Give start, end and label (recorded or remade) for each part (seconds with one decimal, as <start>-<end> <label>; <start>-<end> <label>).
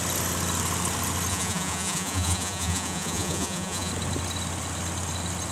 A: 0.0-1.3 recorded; 1.3-3.9 remade; 3.9-5.5 recorded